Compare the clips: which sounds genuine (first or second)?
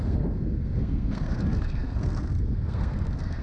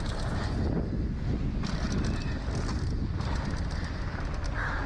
second